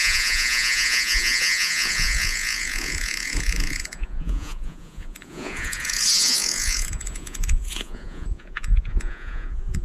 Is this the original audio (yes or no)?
no